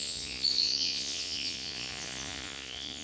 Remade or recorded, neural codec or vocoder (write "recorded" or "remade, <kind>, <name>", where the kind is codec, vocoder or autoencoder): remade, vocoder, Vocos